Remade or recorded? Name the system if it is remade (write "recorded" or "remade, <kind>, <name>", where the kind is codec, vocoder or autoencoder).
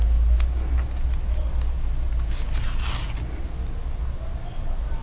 recorded